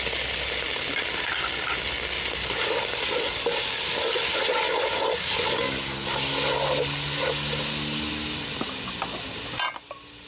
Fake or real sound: real